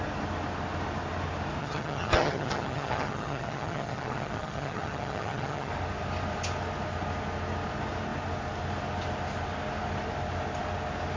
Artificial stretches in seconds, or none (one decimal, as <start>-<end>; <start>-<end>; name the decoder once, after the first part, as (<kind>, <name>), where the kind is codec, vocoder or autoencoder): 1.6-5.7 (vocoder, HiFi-GAN)